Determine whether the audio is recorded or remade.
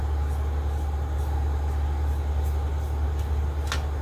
recorded